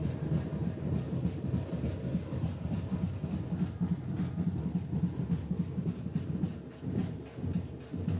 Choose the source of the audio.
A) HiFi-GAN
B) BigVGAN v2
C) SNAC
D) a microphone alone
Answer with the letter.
D